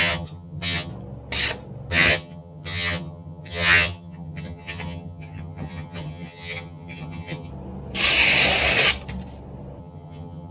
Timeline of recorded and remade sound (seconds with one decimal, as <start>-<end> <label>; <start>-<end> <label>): 0.0-0.9 remade; 0.9-1.9 recorded; 1.9-7.5 remade; 7.5-9.8 recorded; 9.8-10.5 remade